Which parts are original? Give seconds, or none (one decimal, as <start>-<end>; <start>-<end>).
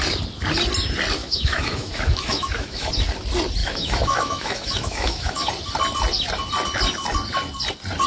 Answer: 0.0-1.2; 2.9-3.6; 5.5-8.1